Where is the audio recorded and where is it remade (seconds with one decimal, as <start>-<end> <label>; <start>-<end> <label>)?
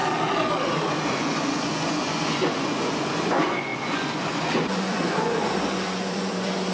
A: 0.0-0.6 recorded; 0.6-6.7 remade